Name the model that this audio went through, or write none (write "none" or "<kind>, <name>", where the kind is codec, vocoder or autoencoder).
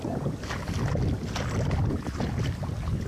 none